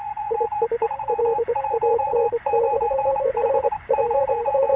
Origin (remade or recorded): remade